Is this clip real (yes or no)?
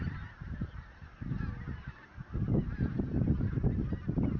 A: yes